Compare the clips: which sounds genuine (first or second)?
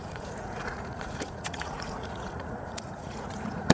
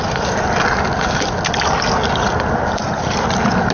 second